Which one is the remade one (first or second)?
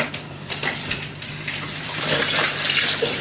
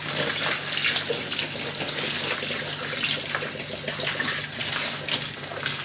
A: first